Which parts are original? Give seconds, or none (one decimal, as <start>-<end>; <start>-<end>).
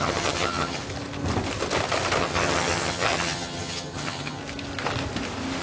0.8-2.2; 4.4-5.6